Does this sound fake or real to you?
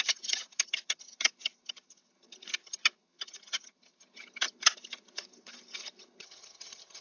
fake